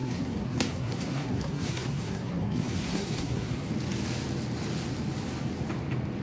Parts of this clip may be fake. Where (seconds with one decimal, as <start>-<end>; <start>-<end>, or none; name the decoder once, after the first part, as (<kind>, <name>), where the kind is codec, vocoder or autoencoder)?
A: 0.0-3.7 (codec, SNAC)